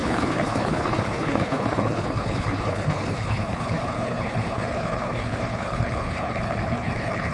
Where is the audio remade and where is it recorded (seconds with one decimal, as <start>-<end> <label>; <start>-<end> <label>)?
0.0-7.3 remade